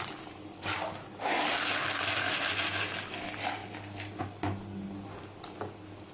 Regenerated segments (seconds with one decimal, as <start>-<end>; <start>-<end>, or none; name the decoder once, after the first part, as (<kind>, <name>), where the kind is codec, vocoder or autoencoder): none